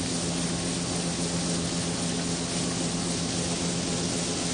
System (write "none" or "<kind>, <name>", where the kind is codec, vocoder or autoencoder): none